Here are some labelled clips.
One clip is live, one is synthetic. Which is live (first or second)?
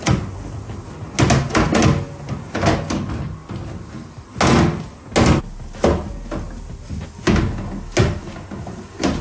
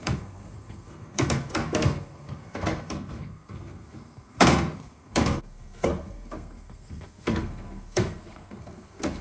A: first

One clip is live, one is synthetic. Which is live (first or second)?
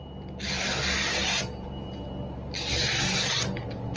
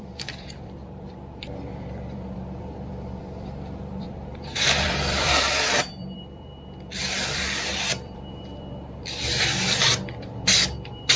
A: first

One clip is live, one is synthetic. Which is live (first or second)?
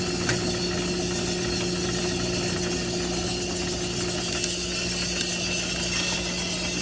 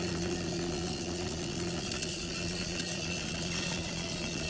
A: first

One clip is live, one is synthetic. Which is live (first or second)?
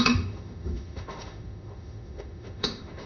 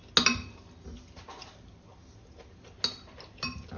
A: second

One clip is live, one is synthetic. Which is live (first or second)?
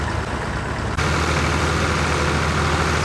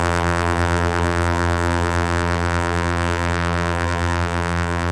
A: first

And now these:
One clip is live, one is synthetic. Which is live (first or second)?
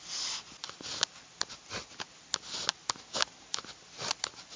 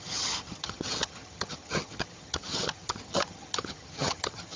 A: first